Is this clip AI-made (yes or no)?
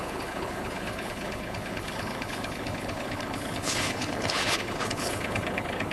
yes